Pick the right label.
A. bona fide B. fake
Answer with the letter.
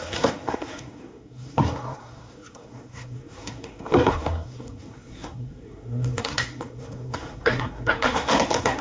B